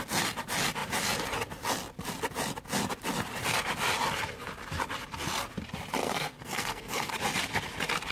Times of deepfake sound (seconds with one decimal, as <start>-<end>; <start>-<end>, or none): 6.0-7.1